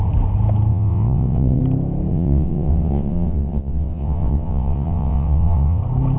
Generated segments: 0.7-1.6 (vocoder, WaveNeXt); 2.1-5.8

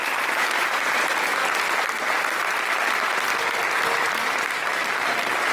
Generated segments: 0.0-1.4 (vocoder, BigVGAN v2); 4.7-5.5

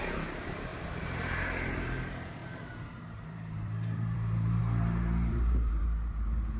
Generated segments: 0.0-6.6 (vocoder, BigVGAN v2)

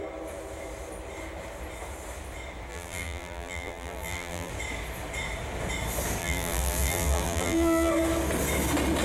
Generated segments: 2.7-4.5 (vocoder, BigVGAN v2); 6.2-7.9

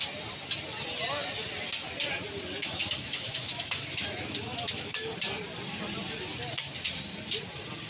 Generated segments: 2.6-5.1 (autoencoder, DAC-VAE)

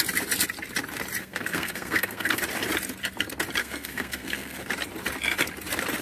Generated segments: 1.2-2.4 (codec, SNAC); 3.6-4.6

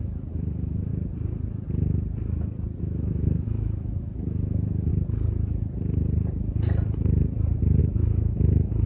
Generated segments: 0.0-0.9 (autoencoder, DAC-VAE); 2.8-4.9; 7.8-8.9

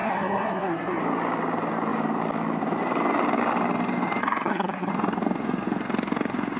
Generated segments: 0.0-1.0 (codec, SNAC); 4.2-4.9